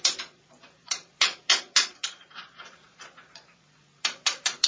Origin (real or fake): fake